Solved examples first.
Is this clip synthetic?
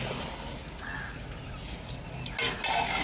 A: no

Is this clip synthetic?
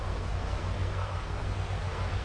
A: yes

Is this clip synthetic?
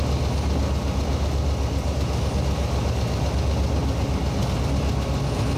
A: no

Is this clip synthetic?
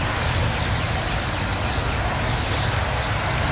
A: no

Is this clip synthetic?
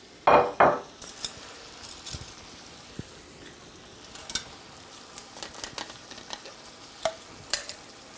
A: no